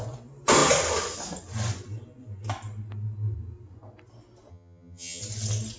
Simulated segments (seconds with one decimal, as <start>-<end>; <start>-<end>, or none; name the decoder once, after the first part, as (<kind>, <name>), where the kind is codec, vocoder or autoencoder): 4.5-5.2 (vocoder, HiFi-GAN)